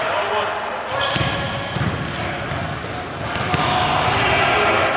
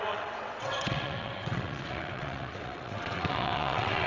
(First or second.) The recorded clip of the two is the first